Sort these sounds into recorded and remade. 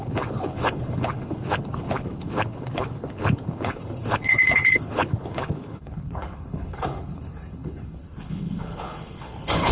remade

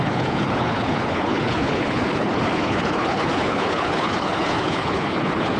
remade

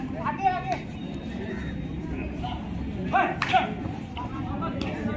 recorded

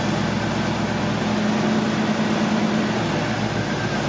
recorded